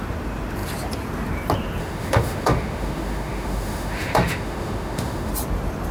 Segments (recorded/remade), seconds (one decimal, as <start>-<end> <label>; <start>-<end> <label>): 0.0-1.8 recorded; 1.8-5.3 remade; 5.3-5.9 recorded